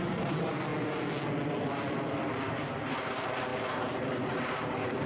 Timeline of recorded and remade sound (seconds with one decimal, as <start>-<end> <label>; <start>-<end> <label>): 0.0-0.7 remade; 0.7-2.1 recorded; 2.1-5.1 remade

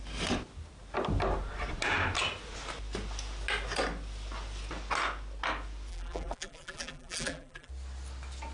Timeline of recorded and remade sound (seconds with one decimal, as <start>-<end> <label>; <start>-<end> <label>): 0.0-5.9 recorded; 5.9-7.7 remade; 7.7-8.5 recorded

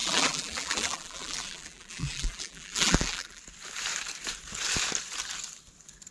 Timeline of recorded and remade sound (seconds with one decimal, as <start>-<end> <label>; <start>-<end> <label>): 0.0-3.4 remade; 3.4-6.1 recorded

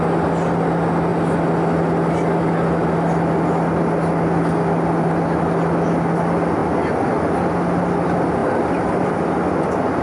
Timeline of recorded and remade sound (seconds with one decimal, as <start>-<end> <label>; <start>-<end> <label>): 0.0-6.6 recorded; 6.6-7.5 remade; 7.5-8.4 recorded; 8.4-9.3 remade; 9.3-10.0 recorded

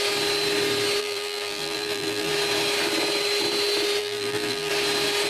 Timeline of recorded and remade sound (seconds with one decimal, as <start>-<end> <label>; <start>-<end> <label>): 0.0-1.0 recorded; 1.0-2.3 remade; 2.3-4.0 recorded; 4.0-4.7 remade; 4.7-5.3 recorded

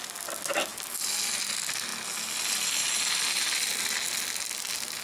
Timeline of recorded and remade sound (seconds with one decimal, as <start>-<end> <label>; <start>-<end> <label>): 0.0-5.0 recorded